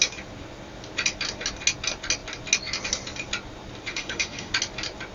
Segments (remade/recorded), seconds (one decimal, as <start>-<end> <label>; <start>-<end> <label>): 0.0-3.9 recorded; 3.9-4.5 remade; 4.5-5.1 recorded

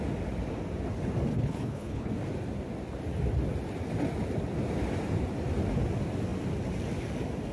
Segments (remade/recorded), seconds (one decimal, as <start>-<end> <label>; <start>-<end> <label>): 0.0-1.3 recorded; 1.3-2.1 remade; 2.1-7.5 recorded